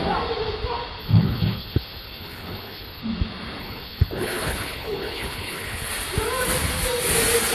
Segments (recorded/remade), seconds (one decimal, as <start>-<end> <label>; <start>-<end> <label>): 0.0-1.0 recorded; 1.0-3.0 remade; 3.0-3.6 recorded; 3.6-5.9 remade; 5.9-7.5 recorded